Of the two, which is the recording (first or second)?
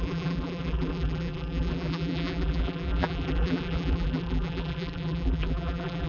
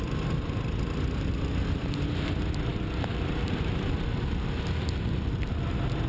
second